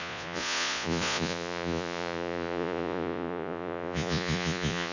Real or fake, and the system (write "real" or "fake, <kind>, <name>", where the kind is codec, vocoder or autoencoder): fake, vocoder, Vocos